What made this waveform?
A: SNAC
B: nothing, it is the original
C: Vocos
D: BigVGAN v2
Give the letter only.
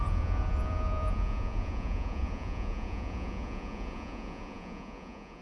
C